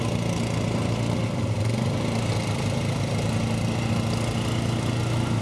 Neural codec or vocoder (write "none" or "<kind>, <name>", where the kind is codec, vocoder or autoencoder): none